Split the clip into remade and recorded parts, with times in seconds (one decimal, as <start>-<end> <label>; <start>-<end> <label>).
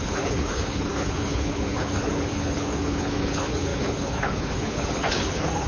0.0-5.7 remade